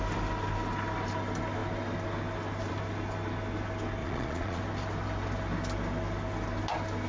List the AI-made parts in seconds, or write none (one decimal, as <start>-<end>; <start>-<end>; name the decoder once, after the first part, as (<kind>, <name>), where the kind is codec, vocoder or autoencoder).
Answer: 4.0-4.6 (vocoder, Vocos)